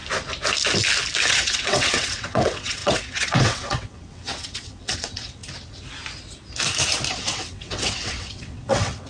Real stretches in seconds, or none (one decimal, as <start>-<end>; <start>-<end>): 0.0-1.3; 5.4-7.1